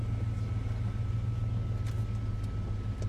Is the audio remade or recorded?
recorded